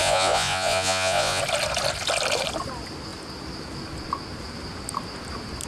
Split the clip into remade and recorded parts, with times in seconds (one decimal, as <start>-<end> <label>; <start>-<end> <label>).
0.0-1.4 remade; 1.4-5.7 recorded